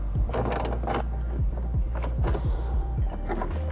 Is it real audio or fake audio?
real